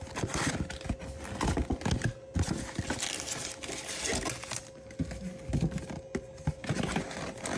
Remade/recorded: recorded